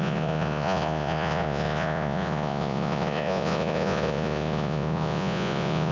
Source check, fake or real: fake